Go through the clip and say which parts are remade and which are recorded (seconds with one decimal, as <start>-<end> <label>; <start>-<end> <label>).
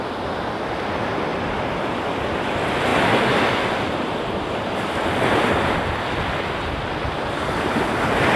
0.0-1.3 recorded; 1.3-2.0 remade; 2.0-8.4 recorded